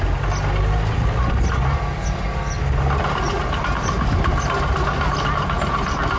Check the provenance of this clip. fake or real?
real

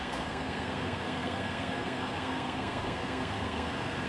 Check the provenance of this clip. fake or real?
fake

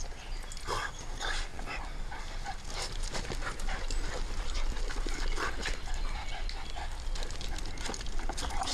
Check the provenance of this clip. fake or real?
real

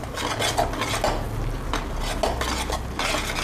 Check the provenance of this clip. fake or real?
real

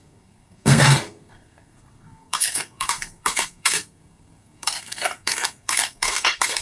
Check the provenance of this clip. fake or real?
fake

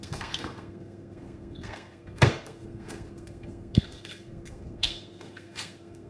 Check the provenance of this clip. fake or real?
fake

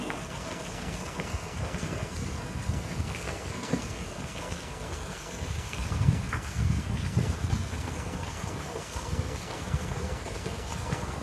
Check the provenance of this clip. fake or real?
fake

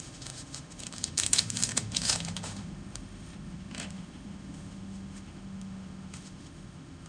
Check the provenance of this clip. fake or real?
fake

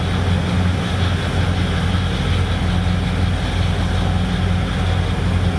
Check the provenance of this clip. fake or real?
real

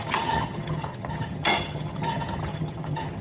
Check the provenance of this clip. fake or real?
fake